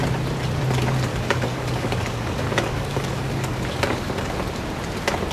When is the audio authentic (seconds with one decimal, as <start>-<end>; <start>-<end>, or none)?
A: 0.0-1.1; 4.3-5.3